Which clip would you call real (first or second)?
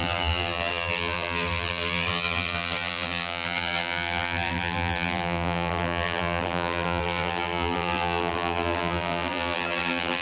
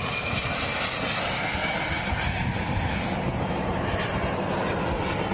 second